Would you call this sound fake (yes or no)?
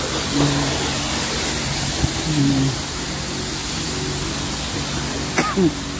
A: no